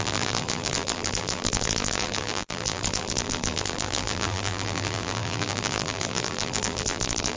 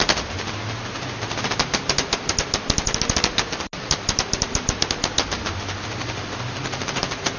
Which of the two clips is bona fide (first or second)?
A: second